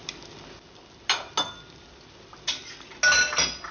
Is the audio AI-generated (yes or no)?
no